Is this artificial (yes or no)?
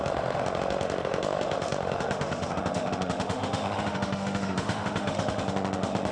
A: yes